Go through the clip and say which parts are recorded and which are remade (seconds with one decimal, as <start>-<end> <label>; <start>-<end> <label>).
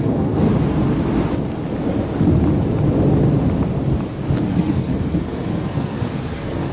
0.0-0.5 remade; 0.5-4.5 recorded; 4.5-6.7 remade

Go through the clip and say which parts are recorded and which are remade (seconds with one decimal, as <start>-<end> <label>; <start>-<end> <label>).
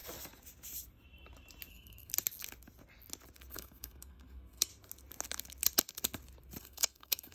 0.0-1.7 recorded; 1.7-2.1 remade; 2.1-3.5 recorded; 3.5-4.7 remade; 4.7-6.6 recorded; 6.6-7.3 remade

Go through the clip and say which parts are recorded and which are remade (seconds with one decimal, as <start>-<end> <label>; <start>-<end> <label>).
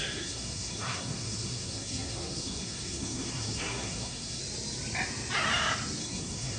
0.0-4.4 remade; 4.4-6.0 recorded; 6.0-6.6 remade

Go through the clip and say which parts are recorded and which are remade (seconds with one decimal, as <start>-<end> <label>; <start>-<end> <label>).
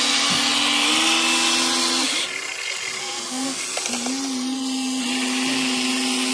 0.0-3.0 recorded; 3.0-3.6 remade; 3.6-6.3 recorded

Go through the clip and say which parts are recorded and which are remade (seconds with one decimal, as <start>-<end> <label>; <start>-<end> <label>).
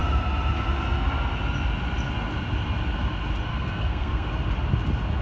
0.0-3.5 recorded; 3.5-4.3 remade; 4.3-5.2 recorded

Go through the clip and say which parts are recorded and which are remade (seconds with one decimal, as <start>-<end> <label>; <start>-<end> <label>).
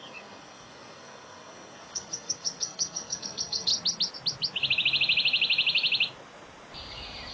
0.0-3.7 remade; 3.7-7.3 recorded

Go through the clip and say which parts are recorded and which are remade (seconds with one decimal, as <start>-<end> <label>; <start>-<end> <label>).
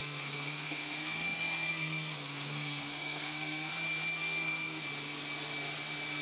0.0-3.7 remade; 3.7-4.2 recorded; 4.2-4.8 remade; 4.8-6.2 recorded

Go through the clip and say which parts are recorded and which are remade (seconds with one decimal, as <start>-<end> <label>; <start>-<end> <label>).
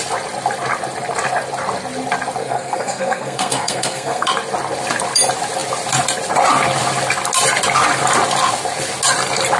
0.0-2.4 recorded; 2.4-4.3 remade; 4.3-9.6 recorded